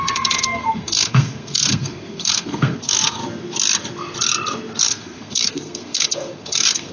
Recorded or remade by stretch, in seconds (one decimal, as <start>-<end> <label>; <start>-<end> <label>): 0.0-3.2 remade; 3.2-4.8 recorded; 4.8-6.9 remade